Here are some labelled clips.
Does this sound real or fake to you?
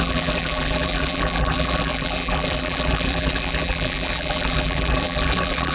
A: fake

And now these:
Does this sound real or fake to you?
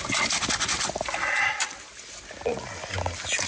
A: real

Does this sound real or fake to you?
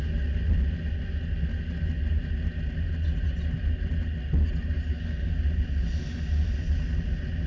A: real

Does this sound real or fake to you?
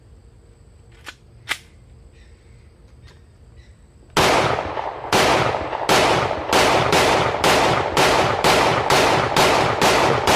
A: real